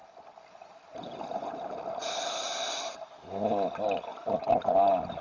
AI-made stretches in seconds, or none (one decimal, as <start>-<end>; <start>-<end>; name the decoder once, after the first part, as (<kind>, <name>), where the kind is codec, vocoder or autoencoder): 4.1-4.7 (vocoder, BigVGAN v2)